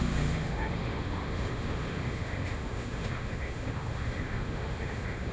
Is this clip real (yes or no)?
no